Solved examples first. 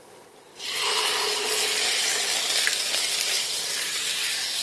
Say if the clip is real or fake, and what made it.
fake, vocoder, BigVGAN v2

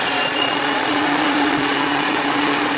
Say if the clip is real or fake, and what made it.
fake, vocoder, Vocos